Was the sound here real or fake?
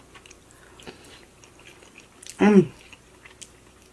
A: real